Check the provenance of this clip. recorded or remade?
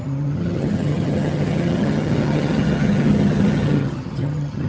remade